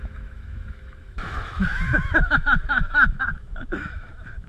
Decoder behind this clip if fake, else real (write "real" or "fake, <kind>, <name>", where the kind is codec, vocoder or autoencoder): fake, autoencoder, DAC-VAE